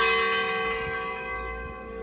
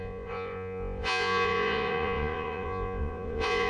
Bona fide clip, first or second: first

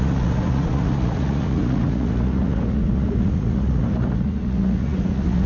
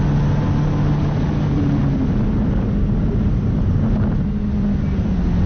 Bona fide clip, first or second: second